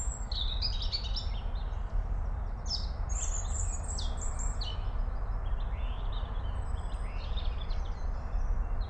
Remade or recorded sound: recorded